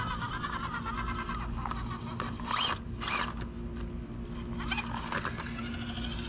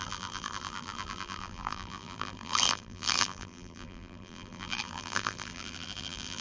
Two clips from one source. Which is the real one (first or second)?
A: first